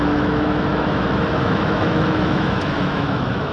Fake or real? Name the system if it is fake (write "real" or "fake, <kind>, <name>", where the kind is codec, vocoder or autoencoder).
fake, autoencoder, DAC-VAE